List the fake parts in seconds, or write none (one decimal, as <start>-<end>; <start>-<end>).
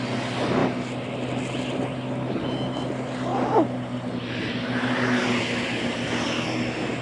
none